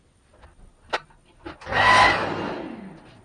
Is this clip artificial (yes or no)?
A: no